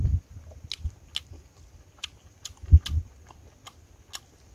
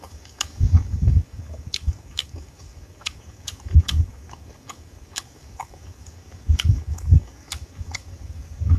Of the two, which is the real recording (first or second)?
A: first